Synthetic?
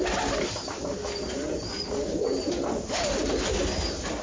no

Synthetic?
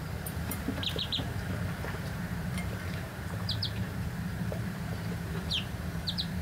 yes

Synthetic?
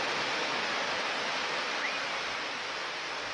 no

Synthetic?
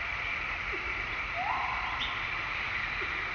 no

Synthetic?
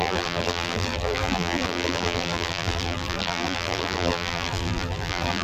yes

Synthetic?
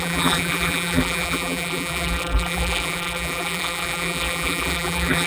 yes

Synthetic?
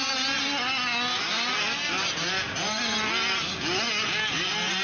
no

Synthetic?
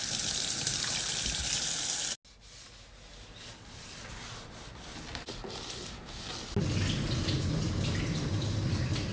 no